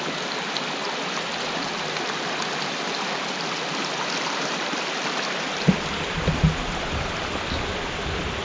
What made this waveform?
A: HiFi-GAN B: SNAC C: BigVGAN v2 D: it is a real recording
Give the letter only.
D